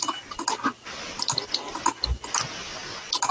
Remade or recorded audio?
recorded